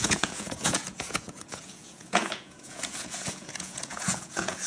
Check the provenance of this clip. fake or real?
fake